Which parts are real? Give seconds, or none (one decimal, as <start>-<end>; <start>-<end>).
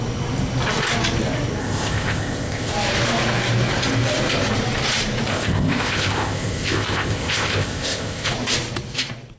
0.0-1.6; 2.7-5.3; 8.3-9.4